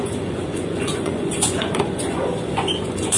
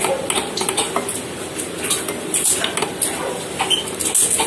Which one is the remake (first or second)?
first